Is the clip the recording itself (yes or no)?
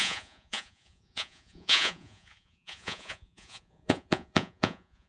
no